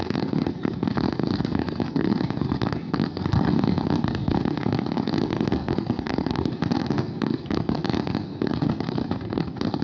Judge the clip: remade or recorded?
remade